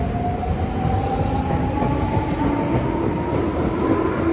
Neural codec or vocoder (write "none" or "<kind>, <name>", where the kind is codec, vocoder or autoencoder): none